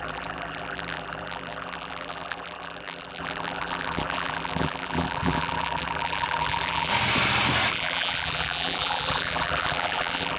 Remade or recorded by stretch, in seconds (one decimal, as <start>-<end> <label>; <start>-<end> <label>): 0.0-6.9 remade; 6.9-7.7 recorded; 7.7-10.4 remade